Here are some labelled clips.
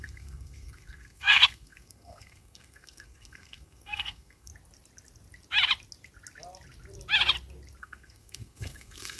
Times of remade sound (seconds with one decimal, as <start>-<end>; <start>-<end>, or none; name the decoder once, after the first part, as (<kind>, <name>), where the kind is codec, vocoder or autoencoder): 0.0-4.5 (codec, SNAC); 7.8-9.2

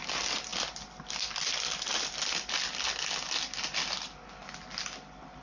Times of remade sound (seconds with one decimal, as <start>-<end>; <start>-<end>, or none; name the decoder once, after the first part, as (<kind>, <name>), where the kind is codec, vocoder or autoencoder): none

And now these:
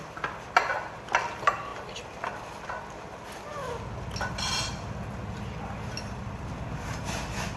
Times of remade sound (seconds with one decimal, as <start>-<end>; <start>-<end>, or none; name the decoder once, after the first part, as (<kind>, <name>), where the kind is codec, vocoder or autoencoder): none

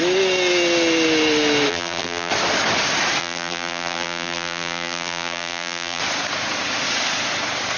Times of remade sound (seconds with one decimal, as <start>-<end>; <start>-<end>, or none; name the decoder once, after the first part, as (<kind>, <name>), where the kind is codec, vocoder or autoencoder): 1.7-2.3 (vocoder, BigVGAN v2); 3.2-6.0

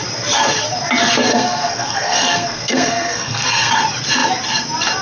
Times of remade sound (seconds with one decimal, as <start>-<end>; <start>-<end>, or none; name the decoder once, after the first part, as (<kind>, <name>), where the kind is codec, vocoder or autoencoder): 1.3-3.7 (codec, SNAC)